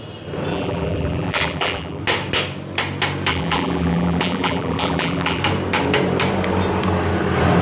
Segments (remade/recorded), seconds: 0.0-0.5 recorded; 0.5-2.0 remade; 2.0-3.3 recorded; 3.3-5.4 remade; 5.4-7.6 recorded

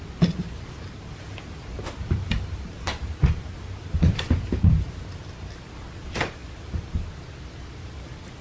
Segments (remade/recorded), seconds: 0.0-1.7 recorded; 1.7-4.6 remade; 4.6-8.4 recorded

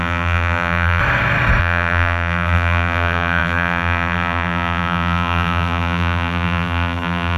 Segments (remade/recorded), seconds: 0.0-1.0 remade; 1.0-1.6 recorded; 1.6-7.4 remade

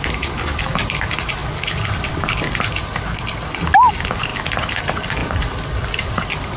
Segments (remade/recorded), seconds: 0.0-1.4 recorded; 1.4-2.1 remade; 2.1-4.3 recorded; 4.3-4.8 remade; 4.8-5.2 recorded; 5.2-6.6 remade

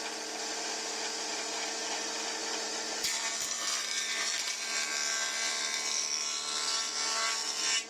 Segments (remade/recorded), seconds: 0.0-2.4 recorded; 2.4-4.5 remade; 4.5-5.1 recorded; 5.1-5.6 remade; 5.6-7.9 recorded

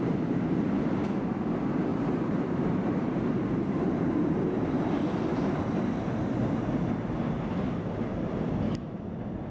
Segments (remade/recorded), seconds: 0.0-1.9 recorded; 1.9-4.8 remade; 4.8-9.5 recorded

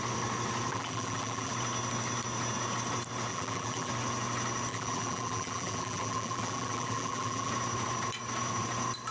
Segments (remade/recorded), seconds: 0.0-0.7 recorded; 0.7-1.5 remade; 1.5-3.3 recorded; 3.3-3.9 remade; 3.9-4.7 recorded; 4.7-7.5 remade; 7.5-9.1 recorded